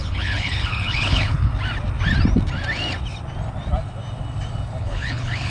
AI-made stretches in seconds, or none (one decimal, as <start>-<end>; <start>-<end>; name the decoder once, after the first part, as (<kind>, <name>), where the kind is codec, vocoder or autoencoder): 0.0-1.5 (codec, HILCodec); 4.8-5.5